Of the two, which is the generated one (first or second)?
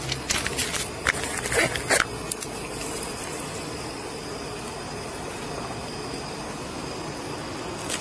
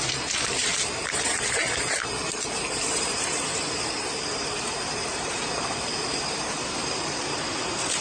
second